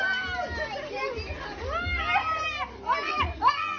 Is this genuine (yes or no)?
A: yes